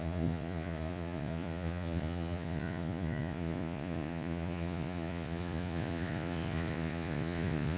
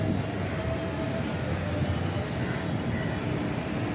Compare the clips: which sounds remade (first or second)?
first